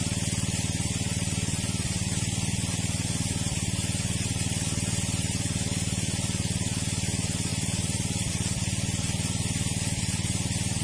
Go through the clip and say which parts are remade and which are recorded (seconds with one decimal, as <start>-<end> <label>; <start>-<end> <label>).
0.0-10.8 recorded